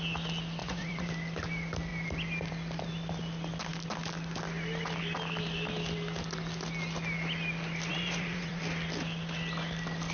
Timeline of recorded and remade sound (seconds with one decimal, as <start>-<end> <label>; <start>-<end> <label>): 0.0-0.6 recorded; 0.6-1.1 remade; 1.1-7.9 recorded; 7.9-8.6 remade; 8.6-10.1 recorded